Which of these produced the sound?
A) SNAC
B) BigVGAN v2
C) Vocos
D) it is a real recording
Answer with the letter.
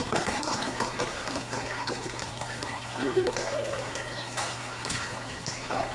A